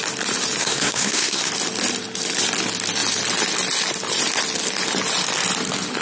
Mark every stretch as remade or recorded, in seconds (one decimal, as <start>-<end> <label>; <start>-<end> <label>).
0.0-0.6 recorded; 0.6-1.5 remade; 1.5-6.0 recorded